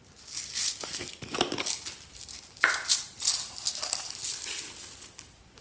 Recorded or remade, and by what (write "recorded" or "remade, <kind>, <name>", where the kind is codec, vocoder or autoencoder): recorded